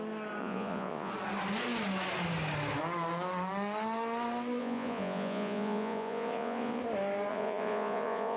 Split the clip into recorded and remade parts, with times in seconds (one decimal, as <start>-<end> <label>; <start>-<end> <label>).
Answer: 0.0-0.4 recorded; 0.4-1.1 remade; 1.1-4.6 recorded; 4.6-6.8 remade; 6.8-7.3 recorded; 7.3-8.4 remade